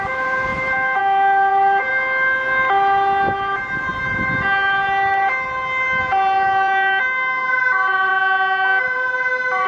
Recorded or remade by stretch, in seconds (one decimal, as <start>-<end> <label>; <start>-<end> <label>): 0.0-1.9 remade; 1.9-6.0 recorded; 6.0-8.1 remade; 8.1-8.8 recorded; 8.8-9.7 remade